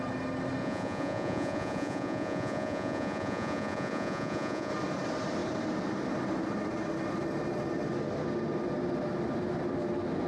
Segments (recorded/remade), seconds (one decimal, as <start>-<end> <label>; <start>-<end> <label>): 0.0-0.6 recorded; 0.6-4.7 remade; 4.7-10.3 recorded